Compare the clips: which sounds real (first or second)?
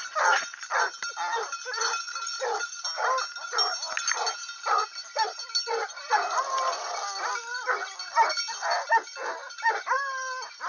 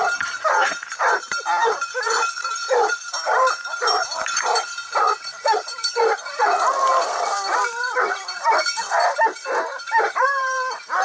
first